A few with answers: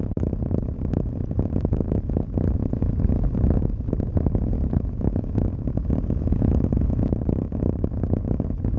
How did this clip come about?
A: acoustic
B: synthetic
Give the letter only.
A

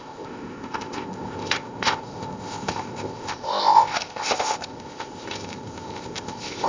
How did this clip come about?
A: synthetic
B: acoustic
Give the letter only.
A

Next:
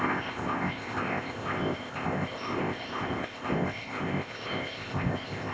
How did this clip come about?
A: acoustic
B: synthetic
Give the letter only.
B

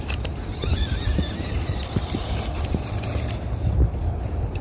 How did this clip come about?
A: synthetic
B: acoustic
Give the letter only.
B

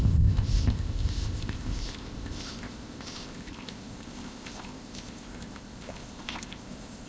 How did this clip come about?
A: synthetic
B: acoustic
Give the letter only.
A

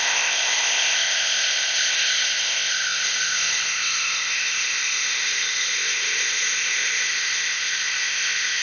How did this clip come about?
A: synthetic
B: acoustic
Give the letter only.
A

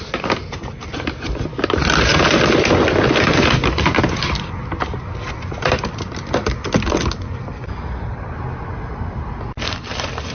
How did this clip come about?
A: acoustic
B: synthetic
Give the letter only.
A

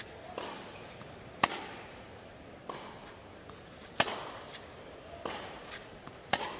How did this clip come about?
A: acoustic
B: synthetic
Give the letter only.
A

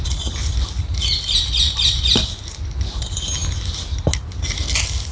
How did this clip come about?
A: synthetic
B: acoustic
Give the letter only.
B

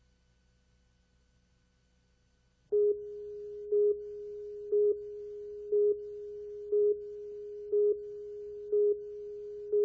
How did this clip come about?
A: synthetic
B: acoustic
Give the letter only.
B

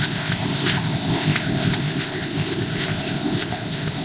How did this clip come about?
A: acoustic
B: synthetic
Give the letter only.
B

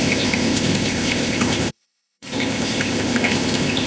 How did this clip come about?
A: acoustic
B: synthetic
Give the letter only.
B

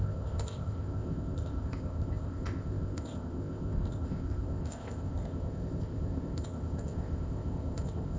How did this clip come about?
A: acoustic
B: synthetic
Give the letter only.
B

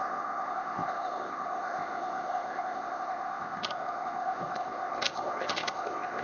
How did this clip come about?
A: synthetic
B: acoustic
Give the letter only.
A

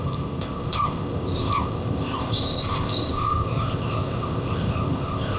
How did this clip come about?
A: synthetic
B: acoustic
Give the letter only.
A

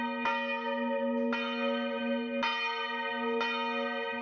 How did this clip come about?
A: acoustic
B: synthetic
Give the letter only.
A